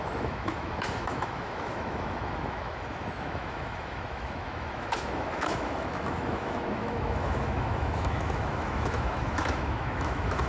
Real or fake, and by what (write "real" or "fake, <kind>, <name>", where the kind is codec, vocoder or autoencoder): fake, autoencoder, DAC-VAE